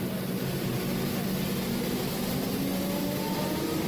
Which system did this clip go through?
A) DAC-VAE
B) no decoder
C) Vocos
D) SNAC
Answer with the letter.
B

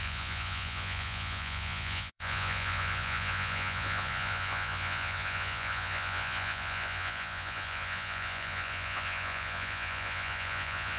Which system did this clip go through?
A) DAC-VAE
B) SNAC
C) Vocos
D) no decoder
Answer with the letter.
C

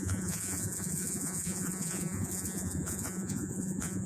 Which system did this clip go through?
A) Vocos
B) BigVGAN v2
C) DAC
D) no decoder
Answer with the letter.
A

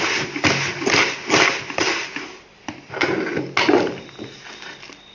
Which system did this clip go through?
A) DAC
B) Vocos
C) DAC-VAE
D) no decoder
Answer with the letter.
D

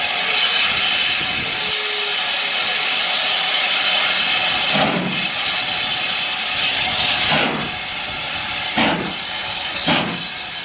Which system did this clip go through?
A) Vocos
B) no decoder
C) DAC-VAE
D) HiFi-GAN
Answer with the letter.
B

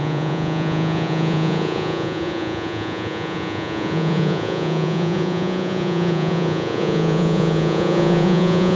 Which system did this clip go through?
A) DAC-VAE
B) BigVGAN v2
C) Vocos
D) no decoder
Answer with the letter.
C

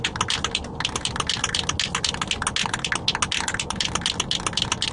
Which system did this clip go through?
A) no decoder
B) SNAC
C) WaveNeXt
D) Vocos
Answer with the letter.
A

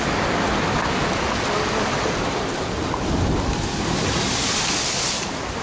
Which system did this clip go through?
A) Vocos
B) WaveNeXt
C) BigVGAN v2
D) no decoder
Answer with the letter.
D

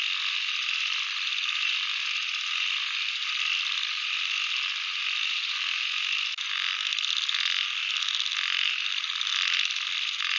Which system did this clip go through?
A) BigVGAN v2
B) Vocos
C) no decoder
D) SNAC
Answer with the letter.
C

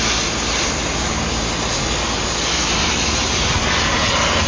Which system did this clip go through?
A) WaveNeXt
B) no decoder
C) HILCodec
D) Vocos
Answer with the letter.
B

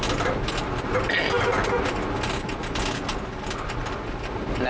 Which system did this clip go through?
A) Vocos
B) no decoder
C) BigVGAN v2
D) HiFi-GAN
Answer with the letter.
B